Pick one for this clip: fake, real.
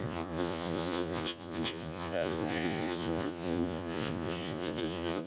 fake